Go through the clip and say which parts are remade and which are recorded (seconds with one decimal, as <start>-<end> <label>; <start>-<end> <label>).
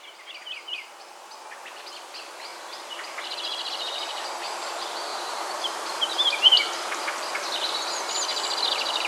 0.0-5.1 recorded; 5.1-7.0 remade; 7.0-9.1 recorded